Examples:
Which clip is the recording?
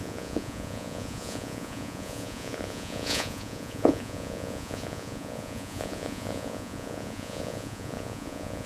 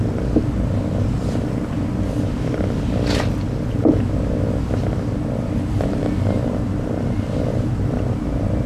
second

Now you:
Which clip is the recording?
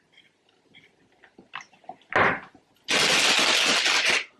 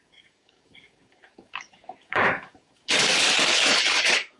first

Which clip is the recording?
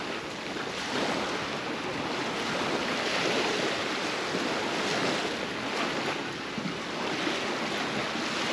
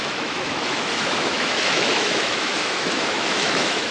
first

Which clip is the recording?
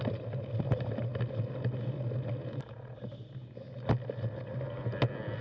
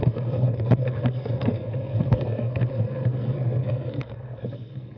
first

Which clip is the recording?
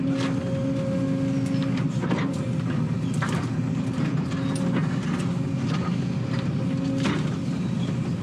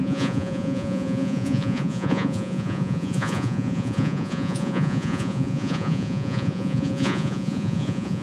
first